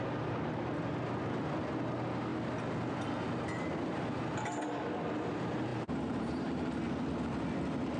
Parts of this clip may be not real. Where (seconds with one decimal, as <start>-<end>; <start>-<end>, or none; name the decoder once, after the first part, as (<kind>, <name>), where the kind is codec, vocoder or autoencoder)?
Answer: 5.7-6.8 (vocoder, BigVGAN v2)